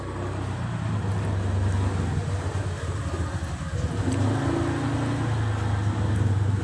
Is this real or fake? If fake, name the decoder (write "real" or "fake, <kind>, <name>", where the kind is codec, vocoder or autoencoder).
real